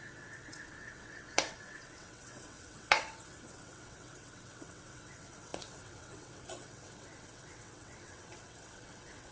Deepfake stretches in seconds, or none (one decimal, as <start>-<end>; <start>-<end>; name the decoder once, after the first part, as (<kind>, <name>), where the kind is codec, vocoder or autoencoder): 0.0-9.3 (vocoder, WaveNeXt)